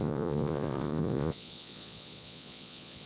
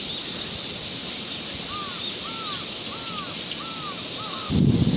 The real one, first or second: second